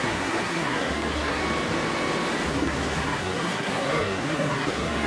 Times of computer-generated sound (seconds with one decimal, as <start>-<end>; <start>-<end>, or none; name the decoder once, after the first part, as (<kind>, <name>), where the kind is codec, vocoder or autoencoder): 0.0-1.4 (codec, SNAC); 2.5-5.1